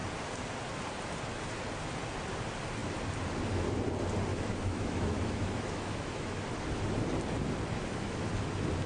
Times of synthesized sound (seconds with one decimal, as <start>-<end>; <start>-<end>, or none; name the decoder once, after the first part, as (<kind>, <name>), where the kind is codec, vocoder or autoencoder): 4.3-6.3 (autoencoder, DAC-VAE); 7.7-8.3